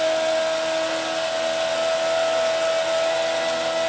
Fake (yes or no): no